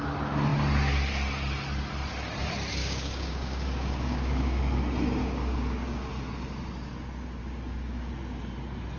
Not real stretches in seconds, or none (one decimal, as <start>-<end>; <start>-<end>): 2.8-4.6; 5.2-6.1; 7.4-8.1